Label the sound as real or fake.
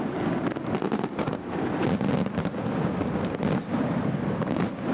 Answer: real